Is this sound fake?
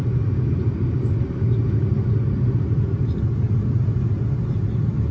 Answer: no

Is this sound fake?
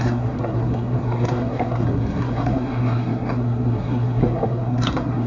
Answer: yes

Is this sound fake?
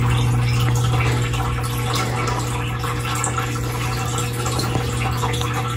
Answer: no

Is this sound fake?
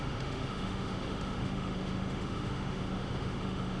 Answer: yes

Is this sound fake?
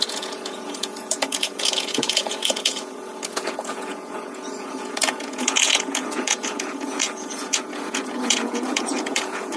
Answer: yes